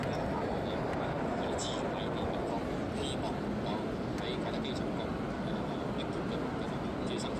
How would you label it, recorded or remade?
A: recorded